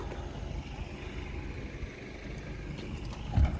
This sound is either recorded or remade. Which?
recorded